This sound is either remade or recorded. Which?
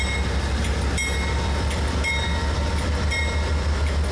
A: recorded